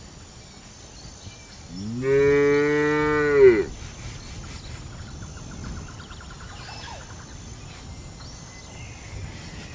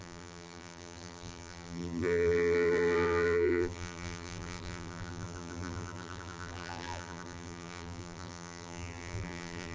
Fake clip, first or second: second